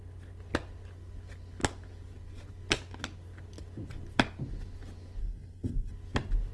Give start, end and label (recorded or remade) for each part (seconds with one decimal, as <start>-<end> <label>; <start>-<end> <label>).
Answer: 0.0-5.2 recorded; 5.2-5.9 remade; 5.9-6.5 recorded